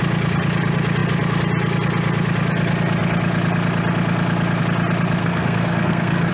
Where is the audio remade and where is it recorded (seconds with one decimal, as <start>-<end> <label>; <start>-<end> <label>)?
0.0-5.2 recorded; 5.2-6.3 remade